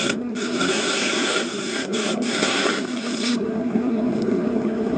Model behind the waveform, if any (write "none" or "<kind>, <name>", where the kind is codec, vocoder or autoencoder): codec, SNAC